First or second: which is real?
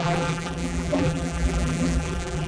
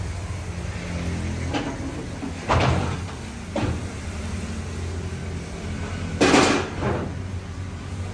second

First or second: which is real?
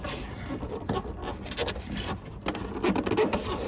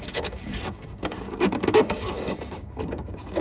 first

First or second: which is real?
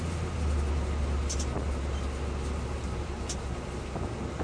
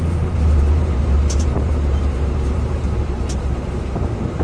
first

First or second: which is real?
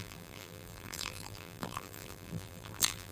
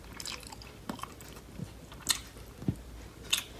second